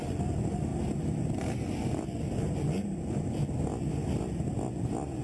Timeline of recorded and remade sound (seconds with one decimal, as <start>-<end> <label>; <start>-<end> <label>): 0.0-5.2 recorded